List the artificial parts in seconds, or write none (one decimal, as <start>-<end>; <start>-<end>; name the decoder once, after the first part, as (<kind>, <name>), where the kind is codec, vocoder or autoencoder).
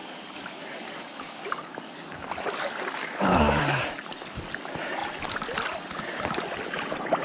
0.0-2.2 (codec, DAC); 3.0-3.8